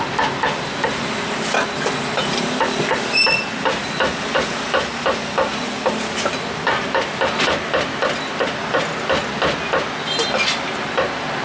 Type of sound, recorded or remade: recorded